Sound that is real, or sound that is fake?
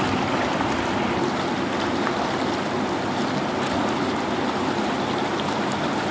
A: real